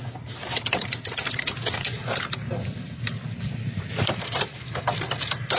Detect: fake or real fake